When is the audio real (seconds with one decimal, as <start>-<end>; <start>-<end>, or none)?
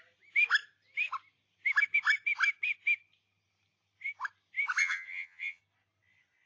0.0-4.8; 5.6-6.5